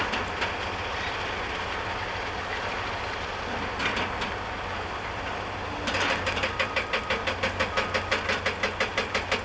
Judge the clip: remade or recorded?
recorded